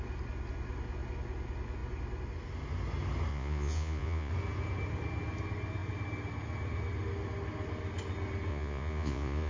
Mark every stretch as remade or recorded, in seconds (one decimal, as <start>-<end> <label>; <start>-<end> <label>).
0.0-3.3 recorded; 3.3-4.3 remade; 4.3-8.5 recorded; 8.5-9.5 remade